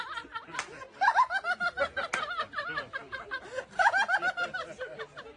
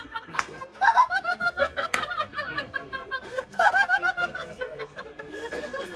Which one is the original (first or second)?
first